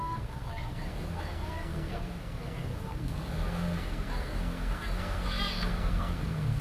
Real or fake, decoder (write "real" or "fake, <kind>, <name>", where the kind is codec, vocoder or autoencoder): fake, codec, SNAC